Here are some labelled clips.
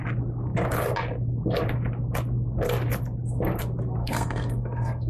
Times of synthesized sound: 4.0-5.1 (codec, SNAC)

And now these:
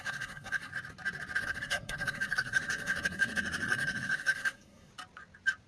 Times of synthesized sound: 0.0-0.7 (codec, SNAC); 1.4-4.9

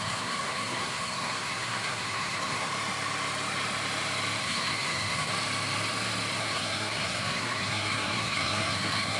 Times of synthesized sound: 0.0-2.7 (codec, SNAC); 4.4-5.3; 6.4-9.2

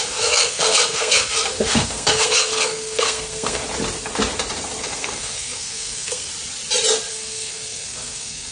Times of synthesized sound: 0.0-3.6 (codec, SNAC); 4.8-6.3; 7.1-8.5

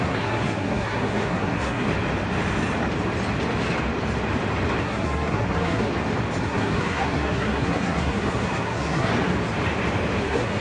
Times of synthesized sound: 0.0-1.9 (codec, SNAC); 4.8-5.9; 6.4-9.1; 10.2-10.6

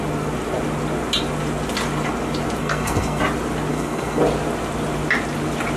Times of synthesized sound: 2.6-3.2 (codec, SNAC); 3.7-4.2